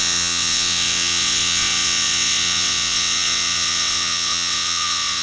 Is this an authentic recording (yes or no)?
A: no